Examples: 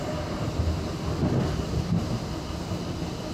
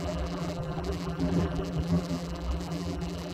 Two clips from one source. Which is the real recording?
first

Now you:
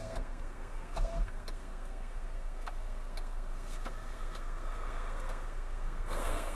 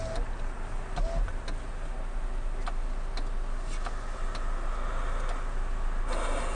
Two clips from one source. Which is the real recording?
second